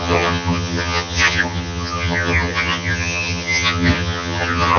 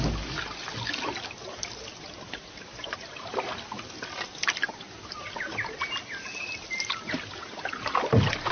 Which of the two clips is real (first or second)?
second